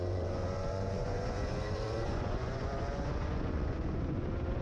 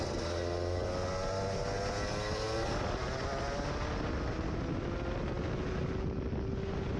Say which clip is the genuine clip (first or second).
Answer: second